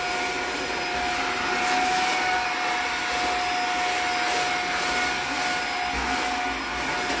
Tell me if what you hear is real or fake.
real